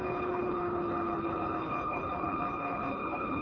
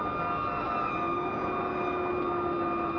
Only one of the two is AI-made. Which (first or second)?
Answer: first